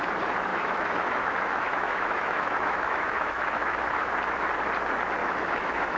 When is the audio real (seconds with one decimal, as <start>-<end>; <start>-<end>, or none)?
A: 0.0-0.5; 4.1-5.2